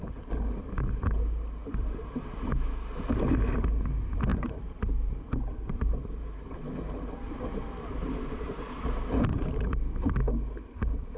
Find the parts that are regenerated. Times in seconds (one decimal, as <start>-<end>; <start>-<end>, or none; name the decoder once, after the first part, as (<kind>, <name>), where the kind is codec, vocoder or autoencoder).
1.6-2.5 (vocoder, BigVGAN v2); 4.3-9.2